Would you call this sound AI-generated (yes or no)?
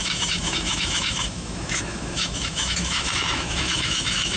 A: yes